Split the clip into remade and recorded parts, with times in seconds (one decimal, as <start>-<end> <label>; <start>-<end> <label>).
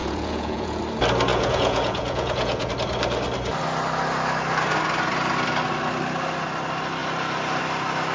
0.0-0.8 remade; 0.8-1.3 recorded; 1.3-2.7 remade; 2.7-8.1 recorded